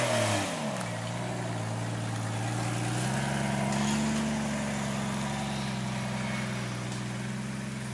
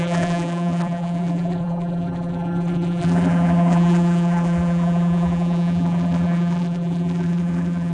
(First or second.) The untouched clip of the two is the first